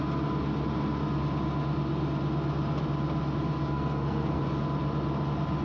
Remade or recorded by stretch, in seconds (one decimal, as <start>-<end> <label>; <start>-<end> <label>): 0.0-3.6 recorded; 3.6-4.4 remade; 4.4-5.6 recorded